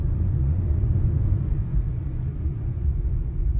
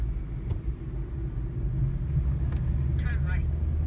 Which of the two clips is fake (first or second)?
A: first